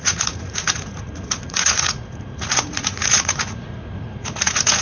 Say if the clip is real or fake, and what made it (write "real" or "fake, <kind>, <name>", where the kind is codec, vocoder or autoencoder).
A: fake, vocoder, Vocos